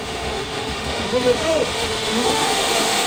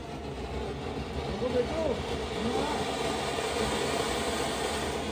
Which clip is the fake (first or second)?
first